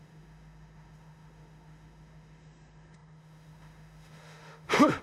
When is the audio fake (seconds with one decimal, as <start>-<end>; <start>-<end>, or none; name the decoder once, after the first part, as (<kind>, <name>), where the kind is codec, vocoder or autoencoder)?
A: 0.0-5.0 (autoencoder, DAC-VAE)